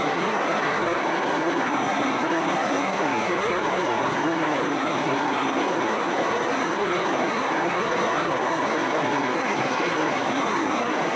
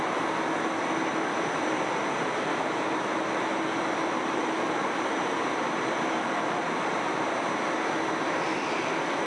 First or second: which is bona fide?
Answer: second